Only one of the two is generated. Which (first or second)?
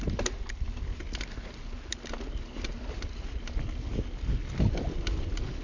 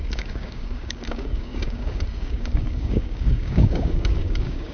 second